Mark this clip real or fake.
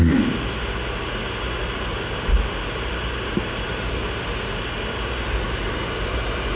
real